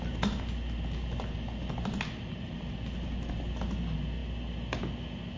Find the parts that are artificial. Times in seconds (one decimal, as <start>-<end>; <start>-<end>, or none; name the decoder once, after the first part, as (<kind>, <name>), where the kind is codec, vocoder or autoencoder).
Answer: none